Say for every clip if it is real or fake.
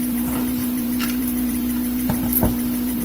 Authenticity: fake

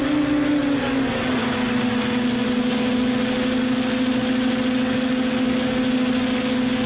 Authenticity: real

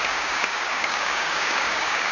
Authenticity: fake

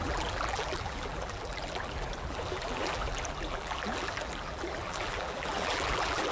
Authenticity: fake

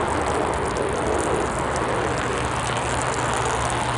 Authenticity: real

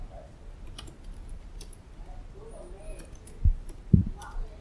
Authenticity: real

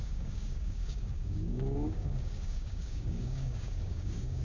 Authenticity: fake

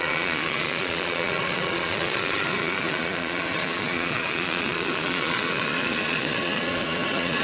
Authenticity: fake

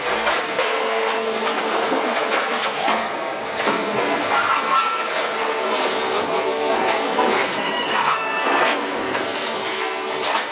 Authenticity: fake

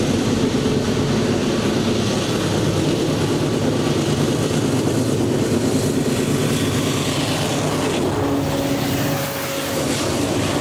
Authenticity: real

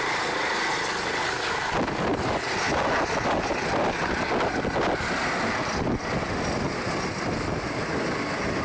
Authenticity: real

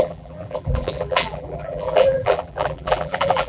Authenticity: fake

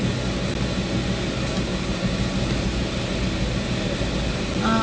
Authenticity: real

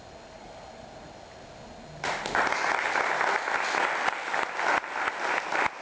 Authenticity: real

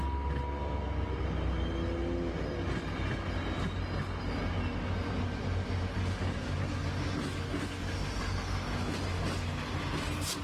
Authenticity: real